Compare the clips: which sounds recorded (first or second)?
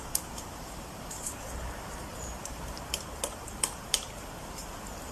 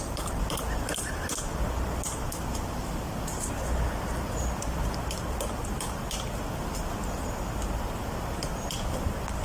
second